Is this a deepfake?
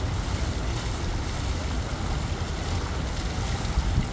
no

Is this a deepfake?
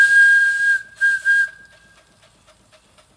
no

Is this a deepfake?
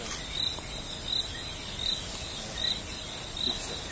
no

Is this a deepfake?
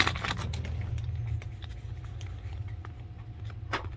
no